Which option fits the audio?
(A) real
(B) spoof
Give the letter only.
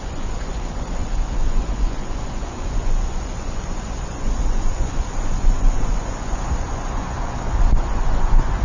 B